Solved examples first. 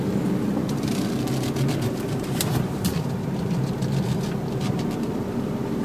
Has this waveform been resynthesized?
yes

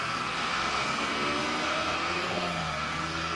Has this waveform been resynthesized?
yes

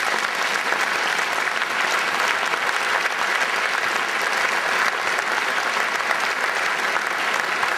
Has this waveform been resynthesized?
no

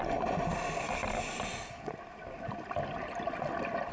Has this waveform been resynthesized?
no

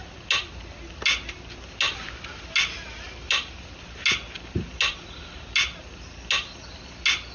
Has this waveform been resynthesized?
no